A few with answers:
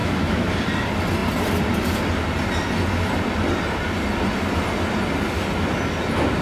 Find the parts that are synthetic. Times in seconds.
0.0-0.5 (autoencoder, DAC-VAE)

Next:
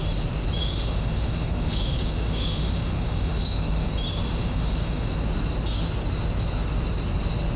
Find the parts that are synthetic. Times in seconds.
0.6-3.9 (autoencoder, DAC-VAE); 4.4-5.1

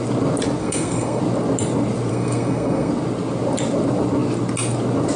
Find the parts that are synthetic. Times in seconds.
0.6-1.2 (codec, SNAC); 2.1-2.9